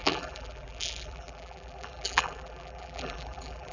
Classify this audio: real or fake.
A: fake